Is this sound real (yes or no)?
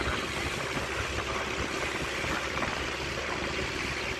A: yes